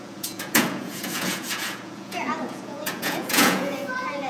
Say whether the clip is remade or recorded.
remade